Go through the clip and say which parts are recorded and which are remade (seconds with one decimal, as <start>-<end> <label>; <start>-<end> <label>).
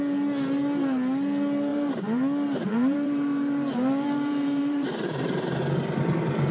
0.0-1.7 recorded; 1.7-5.6 remade; 5.6-6.5 recorded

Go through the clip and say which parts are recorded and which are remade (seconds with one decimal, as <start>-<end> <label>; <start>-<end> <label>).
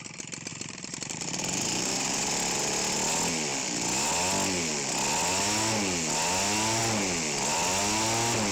0.0-0.5 recorded; 0.5-2.1 remade; 2.1-8.5 recorded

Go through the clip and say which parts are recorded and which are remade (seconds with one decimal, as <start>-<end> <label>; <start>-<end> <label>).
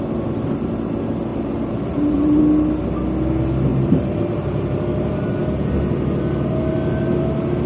0.0-1.3 recorded; 1.3-2.4 remade; 2.4-3.7 recorded; 3.7-4.8 remade; 4.8-7.7 recorded